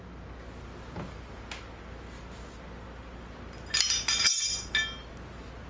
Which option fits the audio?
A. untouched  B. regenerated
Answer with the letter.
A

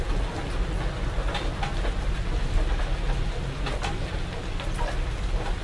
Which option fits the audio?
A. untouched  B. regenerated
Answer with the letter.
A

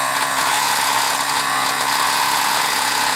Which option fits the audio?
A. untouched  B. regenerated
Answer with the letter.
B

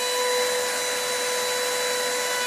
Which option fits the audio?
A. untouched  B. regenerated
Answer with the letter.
A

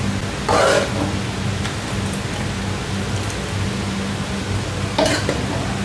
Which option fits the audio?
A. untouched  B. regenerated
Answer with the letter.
A